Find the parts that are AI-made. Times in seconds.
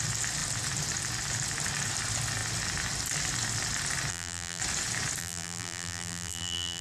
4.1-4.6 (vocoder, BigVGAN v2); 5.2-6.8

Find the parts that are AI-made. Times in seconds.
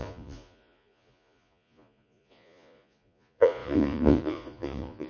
0.0-5.1 (vocoder, Vocos)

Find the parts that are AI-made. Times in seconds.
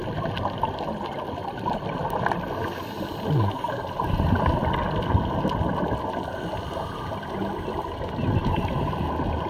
none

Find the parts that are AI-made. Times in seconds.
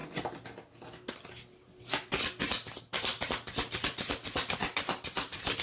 none